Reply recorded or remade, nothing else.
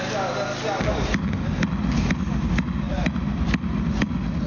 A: recorded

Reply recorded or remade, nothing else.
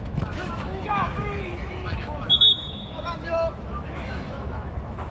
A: remade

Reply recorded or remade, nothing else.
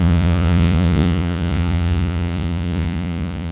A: remade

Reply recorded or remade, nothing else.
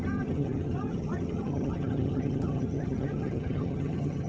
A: remade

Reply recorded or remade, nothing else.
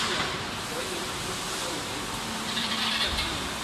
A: remade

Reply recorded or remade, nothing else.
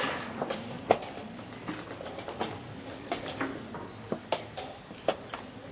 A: recorded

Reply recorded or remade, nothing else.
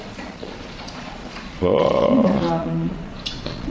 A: remade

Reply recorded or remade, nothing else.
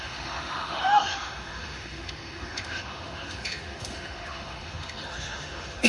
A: remade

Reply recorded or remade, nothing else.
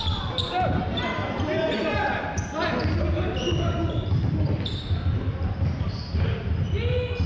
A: recorded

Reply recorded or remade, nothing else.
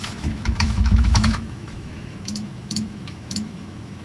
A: remade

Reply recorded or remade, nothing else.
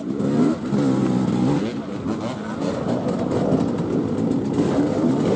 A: recorded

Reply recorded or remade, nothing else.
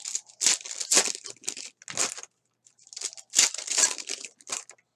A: recorded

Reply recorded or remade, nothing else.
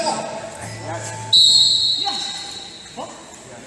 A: recorded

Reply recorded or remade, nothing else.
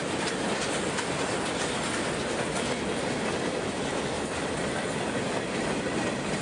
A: recorded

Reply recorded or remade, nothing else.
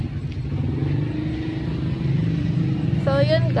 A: recorded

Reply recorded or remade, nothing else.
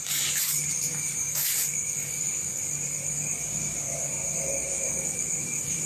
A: remade